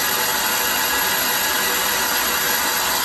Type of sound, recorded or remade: recorded